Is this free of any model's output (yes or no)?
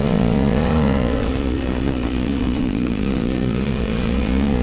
no